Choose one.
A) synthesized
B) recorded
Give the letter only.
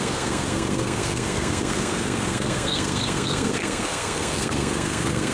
A